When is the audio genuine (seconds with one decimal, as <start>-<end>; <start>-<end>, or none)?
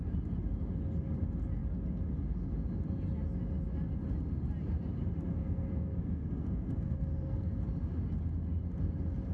0.0-5.4; 7.6-9.3